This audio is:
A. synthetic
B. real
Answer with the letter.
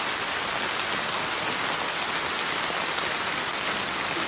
B